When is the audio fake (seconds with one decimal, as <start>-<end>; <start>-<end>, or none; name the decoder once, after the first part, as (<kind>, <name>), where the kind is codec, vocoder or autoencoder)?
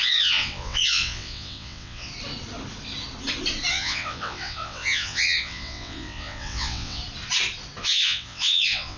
0.0-2.1 (vocoder, WaveNeXt); 3.7-7.0; 7.8-9.0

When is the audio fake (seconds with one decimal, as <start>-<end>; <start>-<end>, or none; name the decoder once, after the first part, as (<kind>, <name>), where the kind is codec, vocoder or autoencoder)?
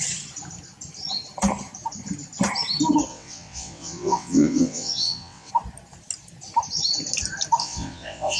3.1-5.5 (vocoder, WaveNeXt); 7.6-8.4